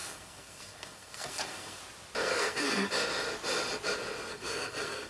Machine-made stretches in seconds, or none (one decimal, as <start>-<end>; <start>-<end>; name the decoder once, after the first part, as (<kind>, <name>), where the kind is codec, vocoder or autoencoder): 0.0-1.8 (codec, SNAC); 2.2-2.9; 4.3-5.1